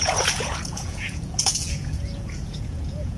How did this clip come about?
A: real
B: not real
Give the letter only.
B